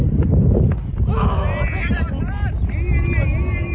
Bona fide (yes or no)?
yes